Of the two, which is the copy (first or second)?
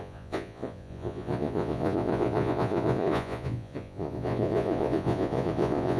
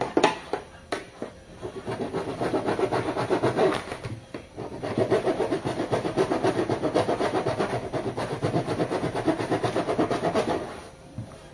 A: first